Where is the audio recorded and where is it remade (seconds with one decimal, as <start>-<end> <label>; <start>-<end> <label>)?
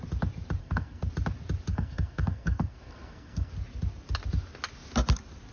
0.0-0.6 recorded; 0.6-1.1 remade; 1.1-1.7 recorded; 1.7-3.5 remade; 3.5-5.5 recorded